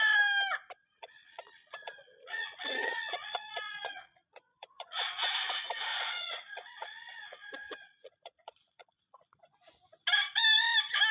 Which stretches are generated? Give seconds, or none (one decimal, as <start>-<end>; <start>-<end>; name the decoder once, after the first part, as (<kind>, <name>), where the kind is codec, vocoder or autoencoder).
0.8-5.3 (vocoder, Vocos); 5.9-9.4